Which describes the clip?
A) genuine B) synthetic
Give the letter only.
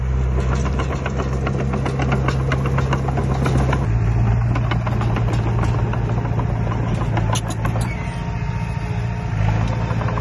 A